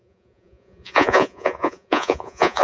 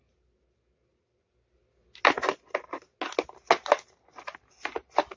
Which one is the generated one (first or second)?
first